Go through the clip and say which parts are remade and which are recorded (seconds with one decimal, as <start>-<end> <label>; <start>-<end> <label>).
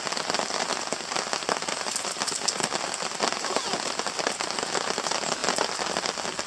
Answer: 0.0-6.5 recorded